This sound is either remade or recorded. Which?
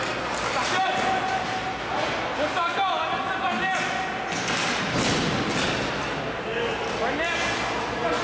recorded